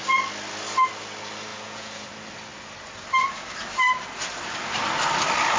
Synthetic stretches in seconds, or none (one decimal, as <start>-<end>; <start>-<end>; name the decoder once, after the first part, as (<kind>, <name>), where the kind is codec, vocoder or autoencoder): 1.5-2.1 (vocoder, Vocos)